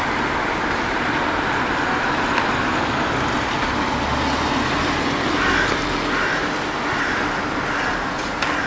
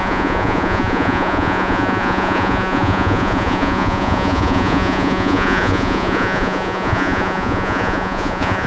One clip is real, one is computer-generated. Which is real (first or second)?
first